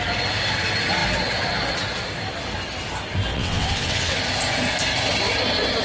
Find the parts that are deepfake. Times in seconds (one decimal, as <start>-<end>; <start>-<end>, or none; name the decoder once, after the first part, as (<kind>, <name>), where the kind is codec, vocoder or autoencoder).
3.3-4.2 (vocoder, WaveNeXt)